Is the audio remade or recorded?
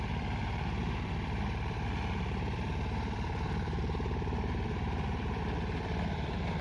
remade